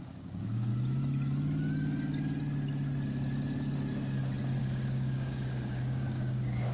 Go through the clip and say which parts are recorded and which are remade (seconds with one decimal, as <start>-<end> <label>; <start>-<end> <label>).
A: 0.0-0.7 remade; 0.7-4.6 recorded; 4.6-6.7 remade